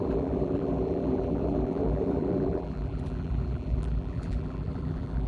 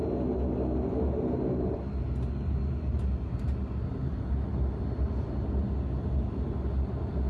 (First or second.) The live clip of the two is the second